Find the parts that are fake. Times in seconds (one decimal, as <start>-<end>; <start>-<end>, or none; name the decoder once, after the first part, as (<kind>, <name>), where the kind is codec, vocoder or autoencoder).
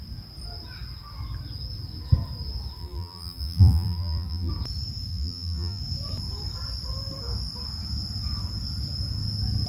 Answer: 2.8-4.5 (vocoder, BigVGAN v2); 5.1-5.8